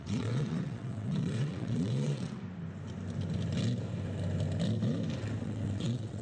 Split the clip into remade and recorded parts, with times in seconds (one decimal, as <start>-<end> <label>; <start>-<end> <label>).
0.0-2.4 remade; 2.4-5.4 recorded; 5.4-6.2 remade